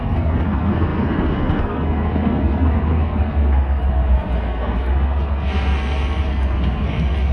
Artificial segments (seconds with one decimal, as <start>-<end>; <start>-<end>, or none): 0.0-7.3